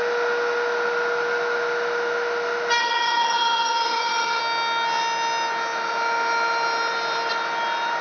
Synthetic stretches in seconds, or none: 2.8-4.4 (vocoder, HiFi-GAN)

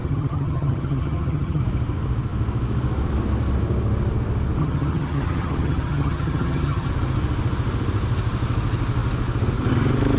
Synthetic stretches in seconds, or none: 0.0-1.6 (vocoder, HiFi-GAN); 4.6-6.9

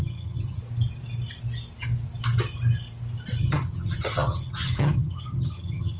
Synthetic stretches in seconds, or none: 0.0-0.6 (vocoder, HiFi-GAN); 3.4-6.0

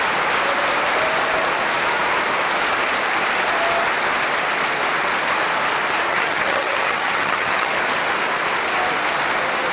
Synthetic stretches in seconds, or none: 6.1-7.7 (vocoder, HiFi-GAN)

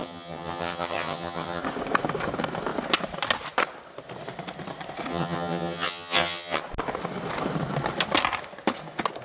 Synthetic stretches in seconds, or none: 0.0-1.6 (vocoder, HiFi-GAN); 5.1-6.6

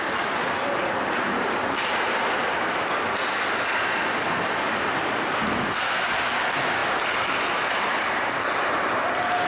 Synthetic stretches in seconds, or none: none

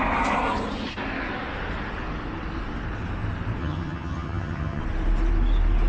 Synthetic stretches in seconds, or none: 3.6-4.8 (vocoder, HiFi-GAN)

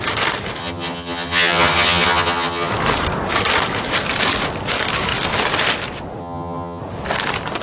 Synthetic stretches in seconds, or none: 0.6-2.7 (vocoder, HiFi-GAN); 6.2-6.8